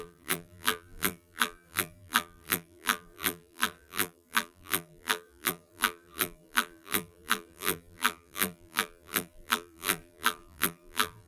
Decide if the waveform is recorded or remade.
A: remade